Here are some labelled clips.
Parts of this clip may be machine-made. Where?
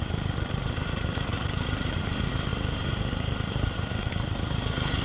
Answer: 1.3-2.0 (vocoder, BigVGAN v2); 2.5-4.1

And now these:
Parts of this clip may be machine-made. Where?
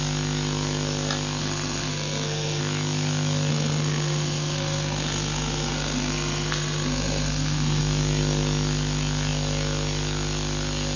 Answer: 1.4-2.6 (codec, SNAC); 3.5-7.8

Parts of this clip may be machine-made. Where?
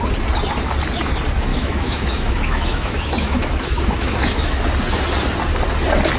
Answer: 1.5-4.6 (autoencoder, DAC-VAE)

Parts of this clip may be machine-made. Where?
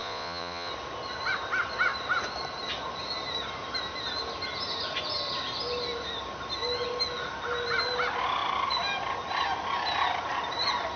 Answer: 0.0-0.7 (vocoder, Vocos)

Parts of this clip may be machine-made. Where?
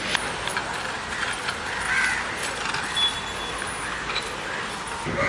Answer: none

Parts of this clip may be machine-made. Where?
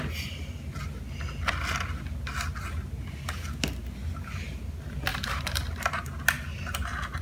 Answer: 5.1-5.7 (vocoder, BigVGAN v2)